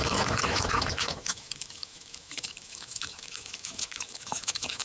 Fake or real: fake